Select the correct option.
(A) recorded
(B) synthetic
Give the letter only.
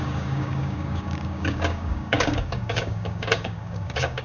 B